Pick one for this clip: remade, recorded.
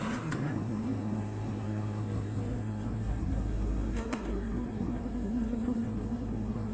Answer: remade